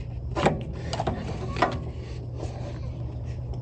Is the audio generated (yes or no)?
no